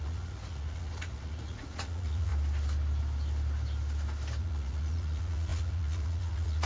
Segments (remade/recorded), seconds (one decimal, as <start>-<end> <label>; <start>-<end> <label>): 0.0-2.3 remade; 2.3-4.4 recorded; 4.4-6.7 remade